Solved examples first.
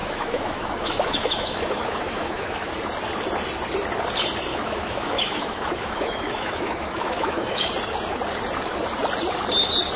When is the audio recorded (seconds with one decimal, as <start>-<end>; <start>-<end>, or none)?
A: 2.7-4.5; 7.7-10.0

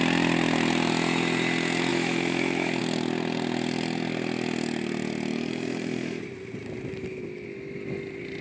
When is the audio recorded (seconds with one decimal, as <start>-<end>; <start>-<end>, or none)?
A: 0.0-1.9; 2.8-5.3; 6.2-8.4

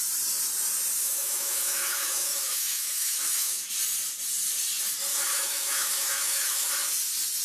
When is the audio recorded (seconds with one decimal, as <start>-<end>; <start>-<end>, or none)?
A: 0.0-1.0; 3.7-5.1; 6.7-7.4

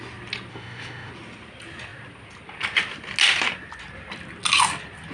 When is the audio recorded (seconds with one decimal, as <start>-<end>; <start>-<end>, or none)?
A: 0.0-0.5; 1.1-5.1

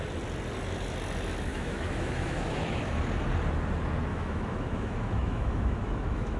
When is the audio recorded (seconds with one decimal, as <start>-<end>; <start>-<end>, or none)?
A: 0.0-1.5; 3.0-4.1

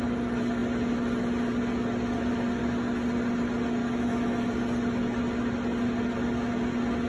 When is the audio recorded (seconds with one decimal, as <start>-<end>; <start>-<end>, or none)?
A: 0.0-3.8; 4.6-7.1

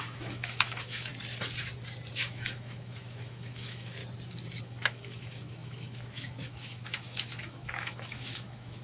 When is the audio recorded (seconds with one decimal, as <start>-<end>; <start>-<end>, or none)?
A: 1.1-2.1; 4.0-4.6

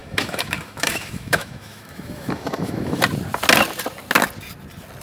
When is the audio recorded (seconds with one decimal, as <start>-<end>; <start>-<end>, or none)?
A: 3.0-5.0